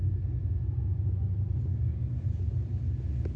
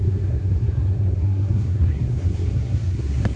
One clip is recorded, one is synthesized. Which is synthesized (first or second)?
second